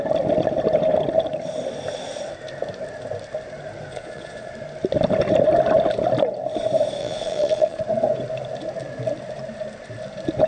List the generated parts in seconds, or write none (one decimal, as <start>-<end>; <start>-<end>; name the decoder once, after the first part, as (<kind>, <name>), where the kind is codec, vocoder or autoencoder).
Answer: 3.9-4.5 (vocoder, Vocos); 7.0-7.8